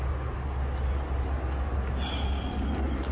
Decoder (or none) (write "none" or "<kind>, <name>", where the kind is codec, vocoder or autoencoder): none